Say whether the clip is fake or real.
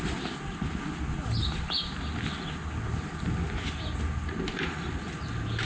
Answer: real